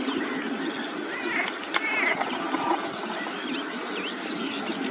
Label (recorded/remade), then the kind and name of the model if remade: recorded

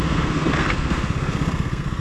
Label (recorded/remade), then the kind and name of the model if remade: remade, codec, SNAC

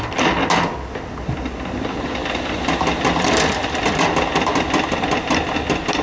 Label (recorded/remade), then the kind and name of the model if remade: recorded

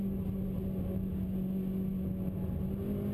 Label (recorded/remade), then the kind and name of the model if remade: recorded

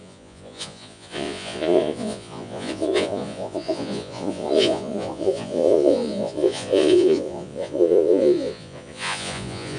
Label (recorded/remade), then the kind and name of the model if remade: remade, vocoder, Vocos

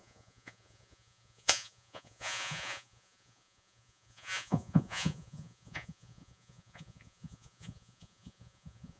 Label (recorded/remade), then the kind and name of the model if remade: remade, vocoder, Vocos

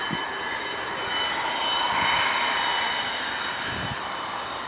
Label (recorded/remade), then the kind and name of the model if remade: remade, vocoder, BigVGAN v2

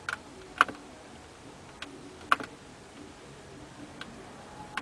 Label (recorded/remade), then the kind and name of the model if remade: remade, vocoder, BigVGAN v2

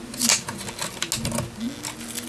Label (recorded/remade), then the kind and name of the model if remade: recorded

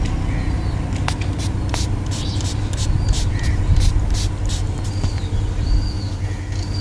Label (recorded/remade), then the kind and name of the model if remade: recorded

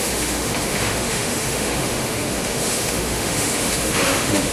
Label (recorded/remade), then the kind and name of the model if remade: remade, autoencoder, DAC-VAE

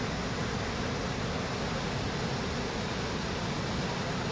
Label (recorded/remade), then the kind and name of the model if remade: recorded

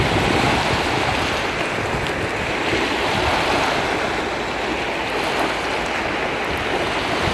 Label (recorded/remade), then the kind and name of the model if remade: recorded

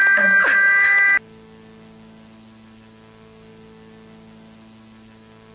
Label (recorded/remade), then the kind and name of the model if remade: recorded